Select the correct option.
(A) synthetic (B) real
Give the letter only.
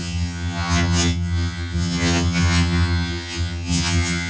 A